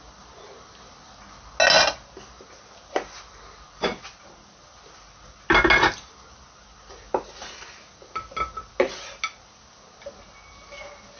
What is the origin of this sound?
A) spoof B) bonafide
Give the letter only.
B